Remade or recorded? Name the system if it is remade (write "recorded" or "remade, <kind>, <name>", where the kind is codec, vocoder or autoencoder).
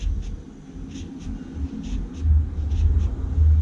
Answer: recorded